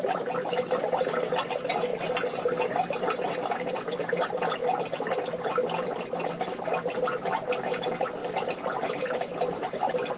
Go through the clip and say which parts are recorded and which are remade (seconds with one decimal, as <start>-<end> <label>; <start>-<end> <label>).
0.0-10.2 recorded